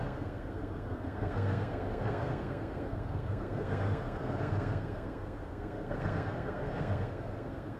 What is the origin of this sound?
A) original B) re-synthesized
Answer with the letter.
B